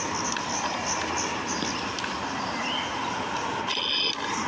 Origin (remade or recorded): recorded